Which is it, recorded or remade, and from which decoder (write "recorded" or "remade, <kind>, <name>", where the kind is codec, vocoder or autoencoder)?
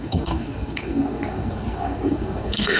remade, codec, SNAC